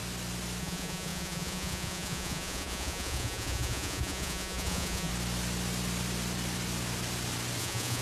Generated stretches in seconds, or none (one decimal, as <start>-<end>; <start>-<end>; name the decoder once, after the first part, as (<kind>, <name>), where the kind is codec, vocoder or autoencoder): 0.6-5.1 (vocoder, Vocos); 7.6-8.0